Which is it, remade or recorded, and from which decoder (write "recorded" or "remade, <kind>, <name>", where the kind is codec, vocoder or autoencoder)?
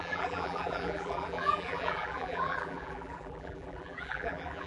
remade, vocoder, BigVGAN v2